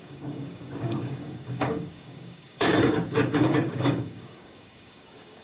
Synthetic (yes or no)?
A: yes